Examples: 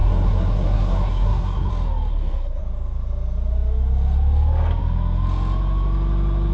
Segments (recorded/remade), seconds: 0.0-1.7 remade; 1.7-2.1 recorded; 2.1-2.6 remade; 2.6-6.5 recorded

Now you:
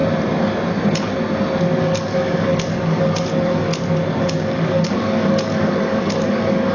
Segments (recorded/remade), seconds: 0.0-1.8 recorded; 1.8-3.7 remade; 3.7-4.3 recorded; 4.3-6.7 remade

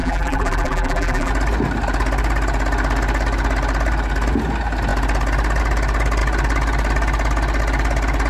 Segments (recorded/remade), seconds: 0.0-1.3 remade; 1.3-8.3 recorded

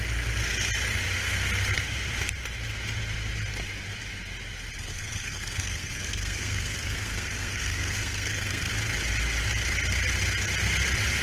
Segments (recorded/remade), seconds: 0.0-4.9 recorded; 4.9-8.7 remade; 8.7-11.2 recorded